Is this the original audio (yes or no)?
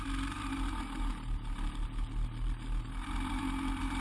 yes